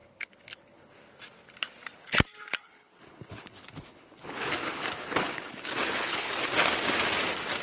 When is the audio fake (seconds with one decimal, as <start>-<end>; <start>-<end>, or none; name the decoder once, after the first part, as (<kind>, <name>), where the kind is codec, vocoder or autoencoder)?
0.0-0.9 (codec, HILCodec); 2.6-6.3